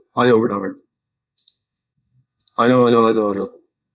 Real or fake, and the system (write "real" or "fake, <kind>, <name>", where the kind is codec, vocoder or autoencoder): fake, codec, SNAC